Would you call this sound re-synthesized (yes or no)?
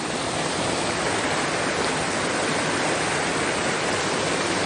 no